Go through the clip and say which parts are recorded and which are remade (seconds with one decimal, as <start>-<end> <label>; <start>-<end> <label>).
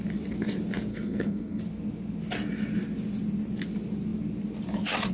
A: 0.0-0.9 recorded; 0.9-1.6 remade; 1.6-5.1 recorded